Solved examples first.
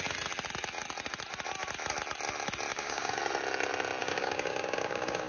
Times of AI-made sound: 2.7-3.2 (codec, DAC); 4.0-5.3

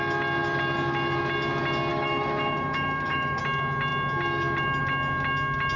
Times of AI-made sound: 1.9-3.4 (autoencoder, DAC-VAE)

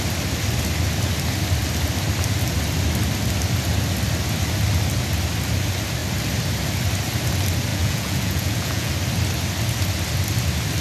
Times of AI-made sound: 7.7-8.9 (vocoder, Vocos)

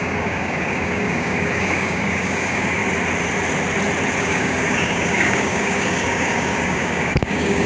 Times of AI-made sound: 0.0-2.8 (codec, DAC); 4.2-7.7

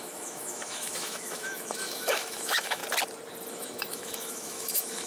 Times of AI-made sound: 0.0-2.8 (autoencoder, DAC-VAE); 3.5-5.1

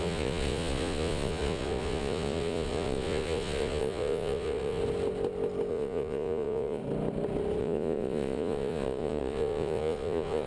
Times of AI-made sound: 0.0-4.8 (vocoder, Vocos); 5.7-6.8; 7.6-10.5

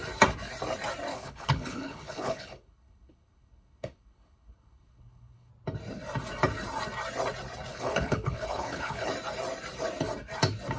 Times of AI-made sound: 1.1-5.5 (codec, HILCodec); 7.7-9.1